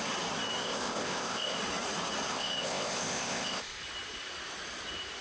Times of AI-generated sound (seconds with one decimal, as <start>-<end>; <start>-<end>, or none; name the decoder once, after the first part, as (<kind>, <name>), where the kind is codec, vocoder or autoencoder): 0.6-1.6 (codec, ZipCodec); 2.3-3.8